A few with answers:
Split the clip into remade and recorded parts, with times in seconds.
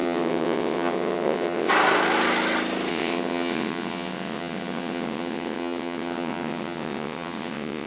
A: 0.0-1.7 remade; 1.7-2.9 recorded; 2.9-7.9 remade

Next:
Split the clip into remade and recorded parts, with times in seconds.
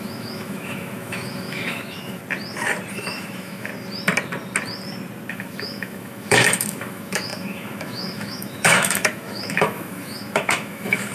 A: 0.0-2.2 remade; 2.2-2.9 recorded; 2.9-3.7 remade; 3.7-5.3 recorded; 5.3-11.1 remade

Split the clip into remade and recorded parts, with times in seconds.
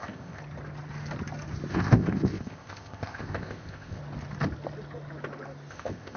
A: 0.0-0.4 remade; 0.4-1.7 recorded; 1.7-4.0 remade; 4.0-5.7 recorded; 5.7-6.2 remade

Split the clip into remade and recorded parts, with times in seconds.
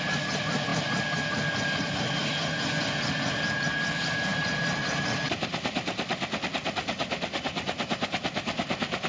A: 0.0-9.1 recorded